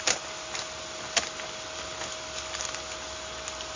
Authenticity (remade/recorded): recorded